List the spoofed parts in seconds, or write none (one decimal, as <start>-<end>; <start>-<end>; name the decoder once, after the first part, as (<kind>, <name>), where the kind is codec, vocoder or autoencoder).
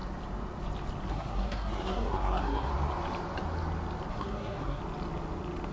1.1-2.7 (codec, SNAC); 4.1-4.8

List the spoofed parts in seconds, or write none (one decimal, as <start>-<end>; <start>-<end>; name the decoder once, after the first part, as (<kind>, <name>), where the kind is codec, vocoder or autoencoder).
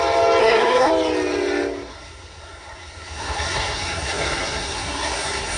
0.4-0.9 (codec, SNAC); 1.9-5.6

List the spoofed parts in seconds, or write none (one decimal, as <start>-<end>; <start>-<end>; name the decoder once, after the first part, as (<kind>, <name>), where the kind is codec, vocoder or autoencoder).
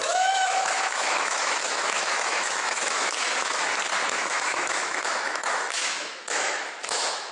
0.0-3.6 (autoencoder, DAC-VAE); 4.0-7.3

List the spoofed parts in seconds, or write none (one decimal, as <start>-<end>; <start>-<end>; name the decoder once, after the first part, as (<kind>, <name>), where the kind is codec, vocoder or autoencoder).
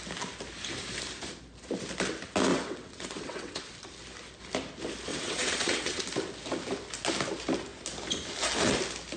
2.5-3.7 (vocoder, WaveNeXt); 5.1-6.0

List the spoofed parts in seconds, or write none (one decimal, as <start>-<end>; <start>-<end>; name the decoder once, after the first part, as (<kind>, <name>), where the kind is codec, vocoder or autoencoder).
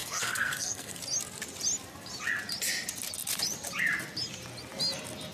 0.0-1.0 (codec, SNAC)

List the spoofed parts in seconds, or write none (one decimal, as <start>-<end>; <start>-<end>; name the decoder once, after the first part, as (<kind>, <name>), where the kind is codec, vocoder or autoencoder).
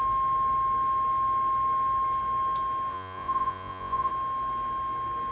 2.9-4.1 (vocoder, Vocos)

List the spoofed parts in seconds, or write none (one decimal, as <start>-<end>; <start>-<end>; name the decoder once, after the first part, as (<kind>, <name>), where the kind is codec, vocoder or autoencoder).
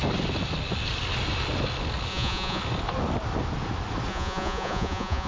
2.1-2.6 (vocoder, Vocos); 4.1-5.3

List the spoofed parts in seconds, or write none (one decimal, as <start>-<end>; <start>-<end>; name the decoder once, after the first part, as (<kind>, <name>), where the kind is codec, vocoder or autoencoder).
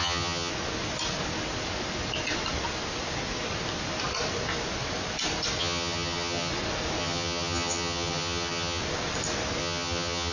0.0-0.5 (vocoder, HiFi-GAN); 5.6-6.5; 7.0-8.8; 9.6-10.3